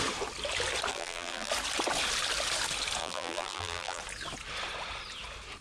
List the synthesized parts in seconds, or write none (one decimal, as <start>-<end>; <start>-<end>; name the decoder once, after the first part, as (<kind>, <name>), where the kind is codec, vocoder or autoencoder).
0.9-1.5 (vocoder, BigVGAN v2); 3.0-4.0